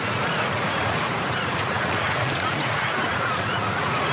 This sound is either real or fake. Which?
fake